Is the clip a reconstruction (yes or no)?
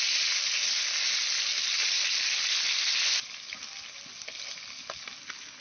no